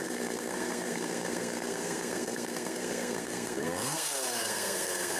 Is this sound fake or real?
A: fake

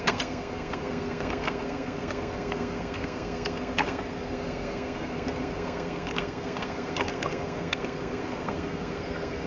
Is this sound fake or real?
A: fake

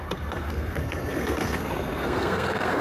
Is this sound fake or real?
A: fake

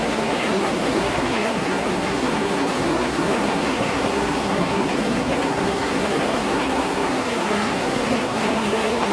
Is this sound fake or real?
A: fake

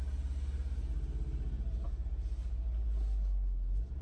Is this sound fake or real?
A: real